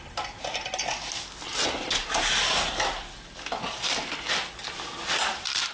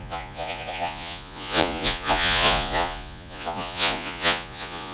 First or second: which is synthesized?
second